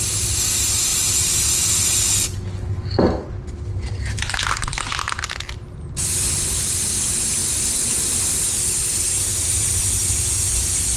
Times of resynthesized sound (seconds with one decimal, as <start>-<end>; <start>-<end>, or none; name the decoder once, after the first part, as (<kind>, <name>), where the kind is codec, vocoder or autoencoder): 9.3-9.8 (vocoder, BigVGAN v2)